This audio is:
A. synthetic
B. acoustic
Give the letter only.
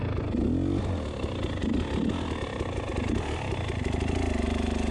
B